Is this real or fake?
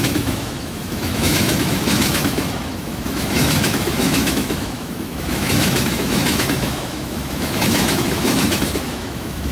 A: fake